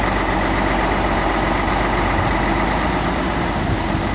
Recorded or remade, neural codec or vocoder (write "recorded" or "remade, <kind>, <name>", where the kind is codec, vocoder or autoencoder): recorded